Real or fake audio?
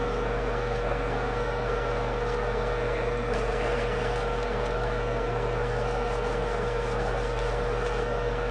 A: fake